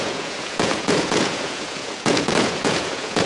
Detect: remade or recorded remade